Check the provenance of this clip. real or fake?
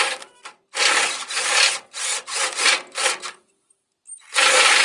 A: real